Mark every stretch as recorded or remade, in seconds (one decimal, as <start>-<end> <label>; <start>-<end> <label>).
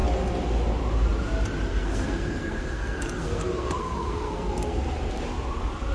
0.0-1.7 recorded; 1.7-4.8 remade; 4.8-5.9 recorded